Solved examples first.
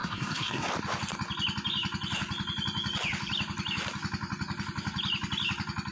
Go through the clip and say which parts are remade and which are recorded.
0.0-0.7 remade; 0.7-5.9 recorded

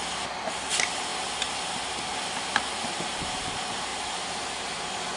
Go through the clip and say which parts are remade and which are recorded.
0.0-3.9 recorded; 3.9-4.5 remade; 4.5-5.2 recorded

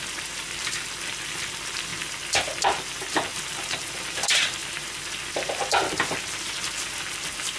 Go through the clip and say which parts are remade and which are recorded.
0.0-7.6 recorded

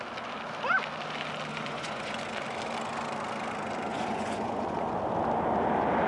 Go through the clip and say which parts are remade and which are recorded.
0.0-1.5 recorded; 1.5-2.2 remade; 2.2-3.9 recorded; 3.9-4.9 remade; 4.9-6.1 recorded

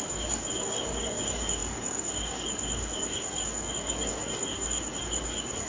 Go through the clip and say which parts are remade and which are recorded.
0.0-5.7 remade

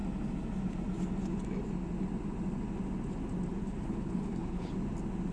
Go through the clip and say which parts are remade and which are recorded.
0.0-3.5 recorded; 3.5-4.7 remade; 4.7-5.3 recorded

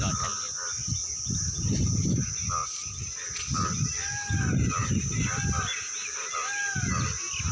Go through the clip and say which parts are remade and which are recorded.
0.0-1.1 recorded; 1.1-2.1 remade; 2.1-2.6 recorded; 2.6-3.1 remade; 3.1-4.8 recorded; 4.8-6.6 remade; 6.6-7.5 recorded